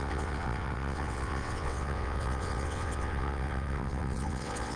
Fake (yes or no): yes